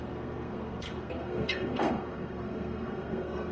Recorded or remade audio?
remade